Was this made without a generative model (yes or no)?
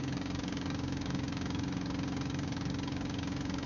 no